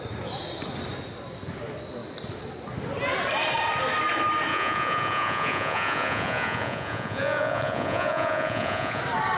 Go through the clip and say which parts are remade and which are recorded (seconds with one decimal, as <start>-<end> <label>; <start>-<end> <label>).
0.0-4.5 recorded; 4.5-9.0 remade; 9.0-9.4 recorded